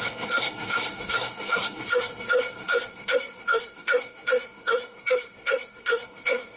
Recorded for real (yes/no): no